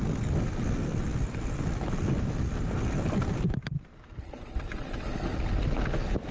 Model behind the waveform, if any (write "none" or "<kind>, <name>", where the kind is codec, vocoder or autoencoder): none